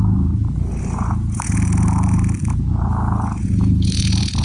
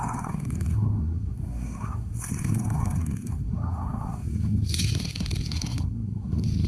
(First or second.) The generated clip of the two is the second